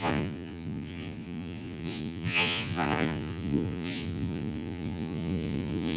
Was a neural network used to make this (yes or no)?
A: yes